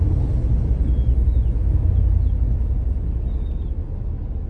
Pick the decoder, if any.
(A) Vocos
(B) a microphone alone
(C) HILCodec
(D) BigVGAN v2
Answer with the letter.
B